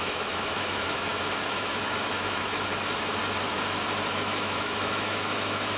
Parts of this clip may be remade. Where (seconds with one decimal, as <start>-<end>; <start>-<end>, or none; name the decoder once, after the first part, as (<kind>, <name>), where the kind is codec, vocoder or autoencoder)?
0.0-3.2 (autoencoder, DAC-VAE); 4.1-5.8